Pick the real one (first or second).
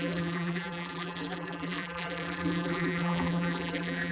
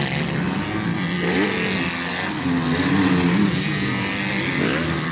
second